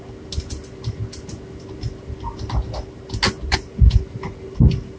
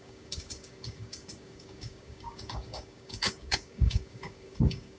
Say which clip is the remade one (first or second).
second